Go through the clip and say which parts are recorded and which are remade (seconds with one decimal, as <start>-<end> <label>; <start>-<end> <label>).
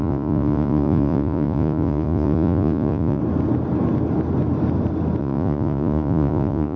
0.0-3.2 remade; 3.2-5.2 recorded; 5.2-6.8 remade